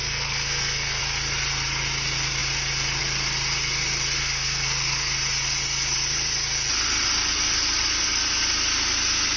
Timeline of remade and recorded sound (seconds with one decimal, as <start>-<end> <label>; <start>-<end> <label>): 0.0-1.0 remade; 1.0-4.2 recorded; 4.2-5.1 remade; 5.1-9.4 recorded